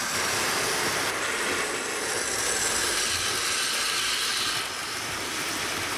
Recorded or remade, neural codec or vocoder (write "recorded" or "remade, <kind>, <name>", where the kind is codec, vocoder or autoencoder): recorded